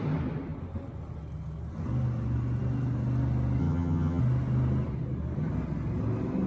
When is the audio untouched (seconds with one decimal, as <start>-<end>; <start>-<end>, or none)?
0.0-3.6; 4.2-6.5